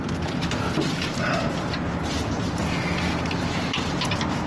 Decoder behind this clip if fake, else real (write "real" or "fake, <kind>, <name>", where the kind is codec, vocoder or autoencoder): real